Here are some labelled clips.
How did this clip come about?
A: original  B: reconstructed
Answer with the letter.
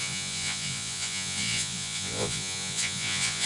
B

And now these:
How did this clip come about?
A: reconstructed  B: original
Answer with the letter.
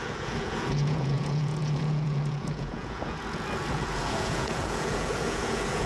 A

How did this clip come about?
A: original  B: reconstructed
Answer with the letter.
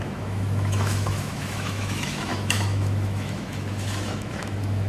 B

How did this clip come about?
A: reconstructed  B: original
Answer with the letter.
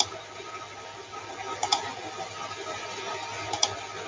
B